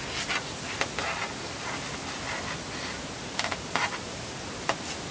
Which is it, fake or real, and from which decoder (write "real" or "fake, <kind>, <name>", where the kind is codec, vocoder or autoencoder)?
real